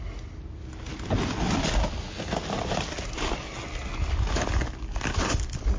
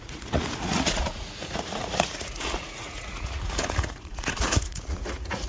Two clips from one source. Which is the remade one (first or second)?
second